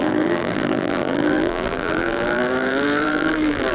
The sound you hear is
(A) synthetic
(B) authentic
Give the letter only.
A